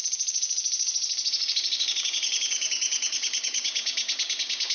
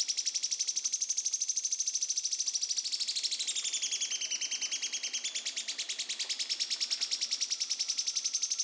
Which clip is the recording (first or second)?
second